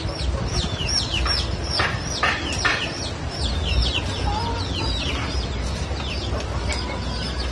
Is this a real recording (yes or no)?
yes